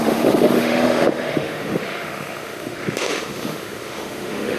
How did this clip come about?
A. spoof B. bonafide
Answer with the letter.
A